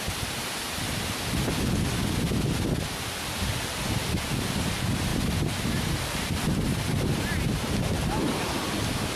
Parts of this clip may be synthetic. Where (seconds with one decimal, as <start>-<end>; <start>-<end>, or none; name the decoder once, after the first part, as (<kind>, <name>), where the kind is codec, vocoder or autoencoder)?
none